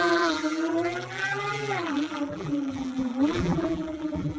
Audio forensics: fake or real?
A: fake